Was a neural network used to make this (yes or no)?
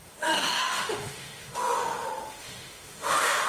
yes